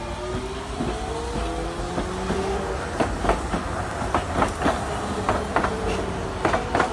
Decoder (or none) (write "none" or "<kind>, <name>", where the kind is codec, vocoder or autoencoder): none